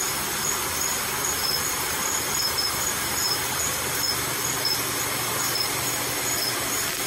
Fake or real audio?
real